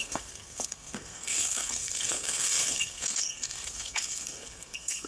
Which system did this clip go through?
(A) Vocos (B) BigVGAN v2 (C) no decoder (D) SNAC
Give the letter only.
D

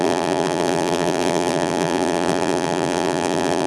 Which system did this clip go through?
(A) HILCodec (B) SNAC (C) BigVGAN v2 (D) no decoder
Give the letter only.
C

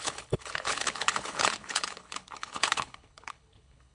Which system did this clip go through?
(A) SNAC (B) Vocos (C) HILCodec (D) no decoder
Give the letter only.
C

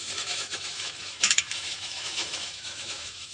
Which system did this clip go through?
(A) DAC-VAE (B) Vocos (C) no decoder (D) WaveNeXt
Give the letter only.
A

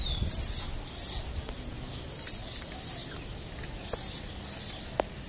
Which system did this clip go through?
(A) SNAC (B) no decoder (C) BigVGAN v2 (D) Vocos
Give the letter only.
C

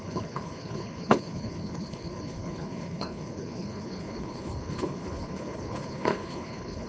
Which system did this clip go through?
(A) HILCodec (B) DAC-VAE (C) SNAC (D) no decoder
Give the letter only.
A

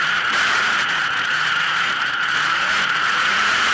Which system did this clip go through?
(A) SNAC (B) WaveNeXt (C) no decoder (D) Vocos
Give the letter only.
D